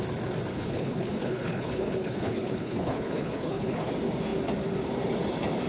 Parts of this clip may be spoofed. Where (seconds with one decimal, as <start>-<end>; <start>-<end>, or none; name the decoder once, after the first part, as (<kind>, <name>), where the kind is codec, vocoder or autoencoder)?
0.5-3.9 (codec, HILCodec)